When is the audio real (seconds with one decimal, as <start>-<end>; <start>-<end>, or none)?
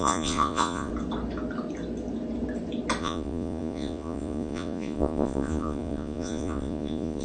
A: 0.9-3.0